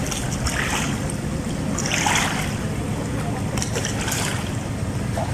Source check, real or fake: real